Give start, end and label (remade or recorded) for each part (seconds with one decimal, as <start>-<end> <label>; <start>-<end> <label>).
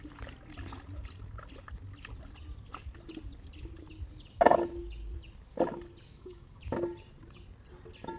0.0-6.1 recorded; 6.1-6.6 remade; 6.6-8.2 recorded